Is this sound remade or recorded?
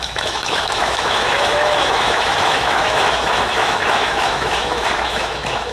remade